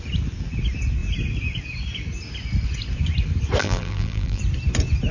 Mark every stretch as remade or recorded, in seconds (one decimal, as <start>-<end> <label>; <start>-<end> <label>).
0.0-3.6 recorded; 3.6-4.4 remade; 4.4-5.1 recorded